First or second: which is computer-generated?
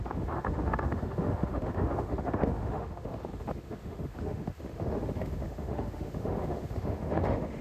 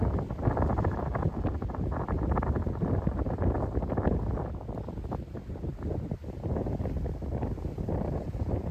first